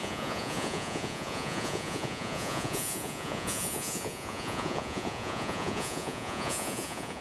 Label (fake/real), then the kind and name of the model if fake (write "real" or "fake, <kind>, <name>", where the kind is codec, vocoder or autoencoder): fake, vocoder, Vocos